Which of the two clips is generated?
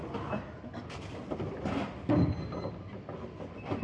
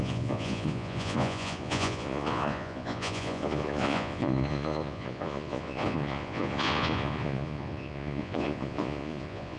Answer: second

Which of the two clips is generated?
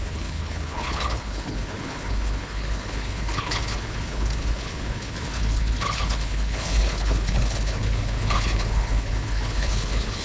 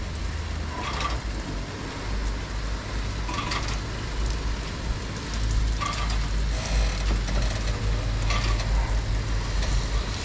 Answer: first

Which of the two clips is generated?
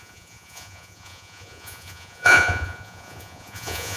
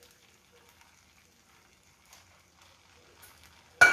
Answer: first